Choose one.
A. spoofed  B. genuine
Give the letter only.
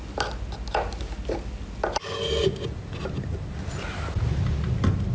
B